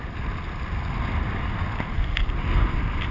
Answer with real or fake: real